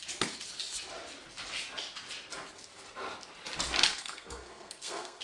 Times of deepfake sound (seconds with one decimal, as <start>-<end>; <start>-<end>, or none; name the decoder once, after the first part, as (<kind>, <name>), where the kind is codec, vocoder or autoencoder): 3.9-5.2 (codec, SNAC)